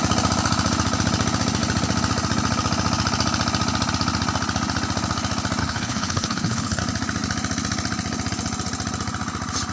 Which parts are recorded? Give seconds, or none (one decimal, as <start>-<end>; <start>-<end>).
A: 0.0-5.6; 6.8-9.7